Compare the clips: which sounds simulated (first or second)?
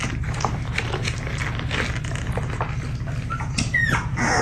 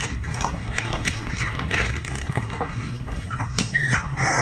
second